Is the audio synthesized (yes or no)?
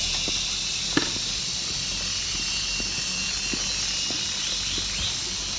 no